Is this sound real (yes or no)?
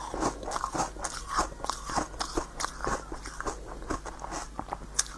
yes